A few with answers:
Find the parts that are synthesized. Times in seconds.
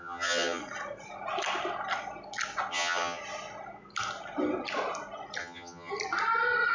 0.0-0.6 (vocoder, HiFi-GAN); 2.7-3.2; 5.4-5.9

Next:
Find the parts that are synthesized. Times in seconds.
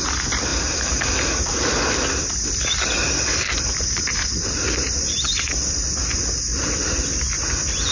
none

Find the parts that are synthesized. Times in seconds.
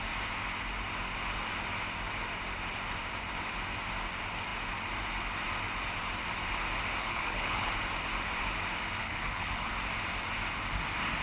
7.0-7.7 (codec, HILCodec); 9.0-9.7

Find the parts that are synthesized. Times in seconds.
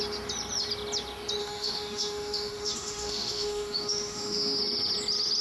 1.4-4.6 (autoencoder, DAC-VAE)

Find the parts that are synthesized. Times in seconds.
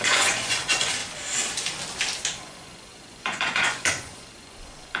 0.0-1.0 (vocoder, Vocos); 2.4-5.0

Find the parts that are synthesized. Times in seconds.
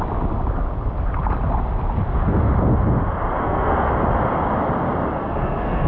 3.4-3.9 (codec, SNAC); 5.2-5.9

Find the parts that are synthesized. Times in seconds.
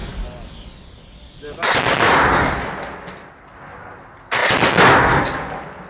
0.0-3.4 (vocoder, BigVGAN v2)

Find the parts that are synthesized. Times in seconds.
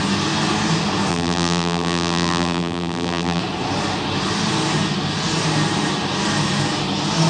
1.1-3.4 (vocoder, BigVGAN v2)